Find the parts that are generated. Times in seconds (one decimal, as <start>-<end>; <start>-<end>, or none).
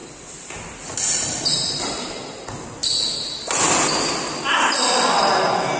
none